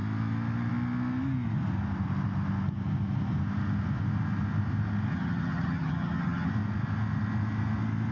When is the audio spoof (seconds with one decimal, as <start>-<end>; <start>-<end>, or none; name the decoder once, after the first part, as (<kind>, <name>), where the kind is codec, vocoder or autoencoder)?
5.1-6.5 (vocoder, HiFi-GAN)